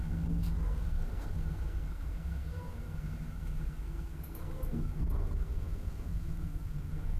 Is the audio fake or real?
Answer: fake